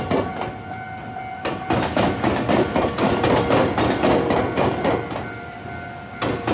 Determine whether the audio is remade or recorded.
recorded